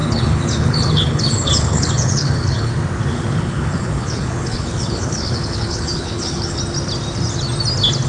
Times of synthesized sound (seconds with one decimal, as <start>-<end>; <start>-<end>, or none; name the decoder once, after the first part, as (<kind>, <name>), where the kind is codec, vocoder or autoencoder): 0.0-2.7 (codec, HILCodec); 3.1-6.6